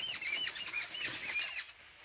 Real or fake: real